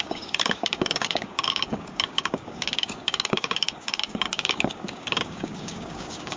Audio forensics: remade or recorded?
remade